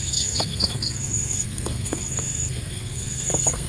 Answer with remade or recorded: remade